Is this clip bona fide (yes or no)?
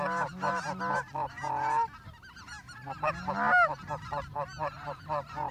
yes